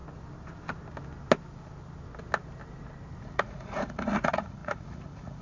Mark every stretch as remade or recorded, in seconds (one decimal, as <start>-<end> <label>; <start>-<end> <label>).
0.0-3.2 recorded; 3.2-5.4 remade